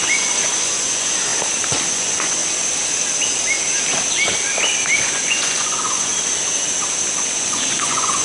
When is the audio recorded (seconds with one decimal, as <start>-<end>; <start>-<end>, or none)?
1.3-1.9; 2.4-5.0; 6.1-7.2